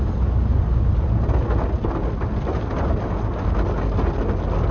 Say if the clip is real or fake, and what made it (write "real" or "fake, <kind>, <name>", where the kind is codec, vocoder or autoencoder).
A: real